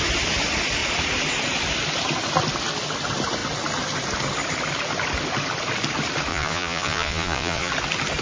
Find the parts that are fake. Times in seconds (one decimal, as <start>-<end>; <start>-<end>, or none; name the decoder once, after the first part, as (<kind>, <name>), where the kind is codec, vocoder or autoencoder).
6.3-7.7 (vocoder, Vocos)